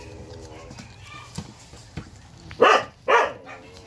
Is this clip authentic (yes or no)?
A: yes